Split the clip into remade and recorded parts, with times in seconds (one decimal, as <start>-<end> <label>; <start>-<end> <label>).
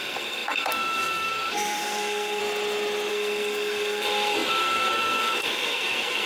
0.0-2.4 remade; 2.4-3.1 recorded; 3.1-6.3 remade